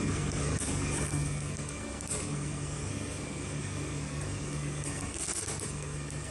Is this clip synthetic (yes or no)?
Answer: yes